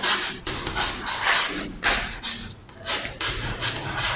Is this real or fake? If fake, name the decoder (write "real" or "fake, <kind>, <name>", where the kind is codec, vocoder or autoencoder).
real